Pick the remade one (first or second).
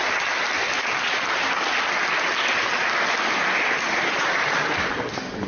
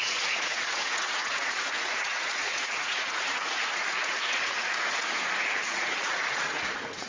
second